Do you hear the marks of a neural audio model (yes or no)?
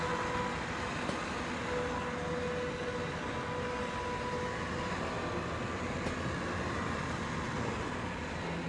no